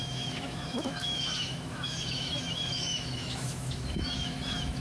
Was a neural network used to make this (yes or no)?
yes